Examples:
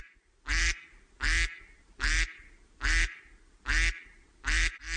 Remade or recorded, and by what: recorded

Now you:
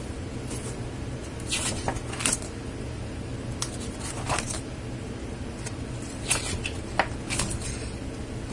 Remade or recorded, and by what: recorded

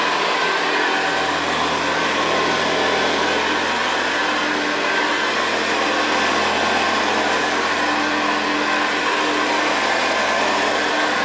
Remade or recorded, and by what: recorded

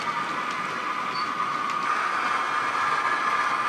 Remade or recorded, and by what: recorded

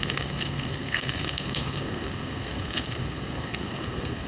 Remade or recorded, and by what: remade, codec, SNAC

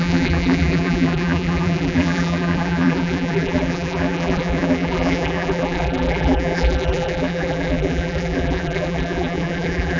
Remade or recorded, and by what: remade, vocoder, BigVGAN v2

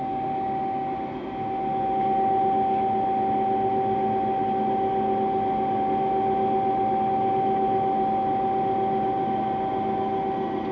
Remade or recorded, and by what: recorded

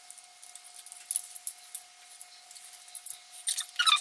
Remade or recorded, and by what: recorded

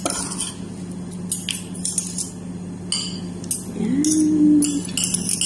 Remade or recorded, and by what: recorded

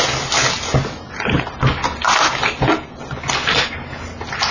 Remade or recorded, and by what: recorded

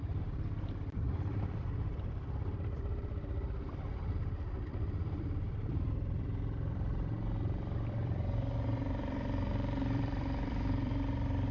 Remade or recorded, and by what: remade, vocoder, BigVGAN v2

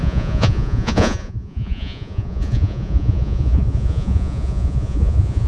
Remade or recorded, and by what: remade, vocoder, Vocos